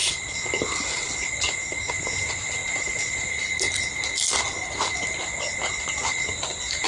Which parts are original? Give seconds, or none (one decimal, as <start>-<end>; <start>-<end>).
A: 0.0-1.9; 2.6-6.5